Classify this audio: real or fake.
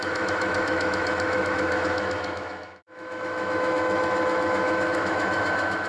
fake